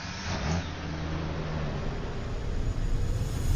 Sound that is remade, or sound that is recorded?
recorded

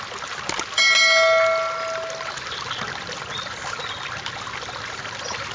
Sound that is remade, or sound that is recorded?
recorded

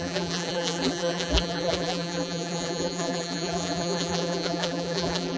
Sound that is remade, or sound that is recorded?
remade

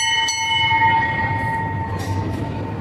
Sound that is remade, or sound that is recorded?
recorded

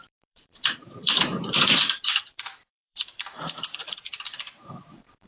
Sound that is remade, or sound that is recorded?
remade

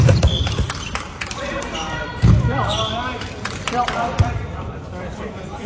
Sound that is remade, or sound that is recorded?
remade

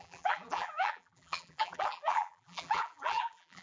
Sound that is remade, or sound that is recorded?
remade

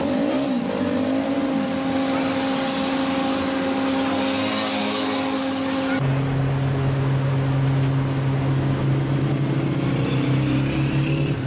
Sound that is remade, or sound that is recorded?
recorded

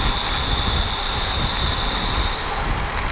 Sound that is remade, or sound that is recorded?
recorded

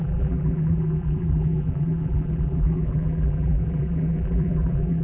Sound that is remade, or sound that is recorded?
remade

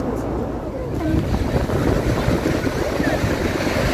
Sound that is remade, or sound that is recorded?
recorded